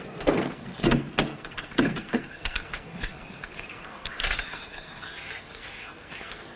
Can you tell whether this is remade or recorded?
remade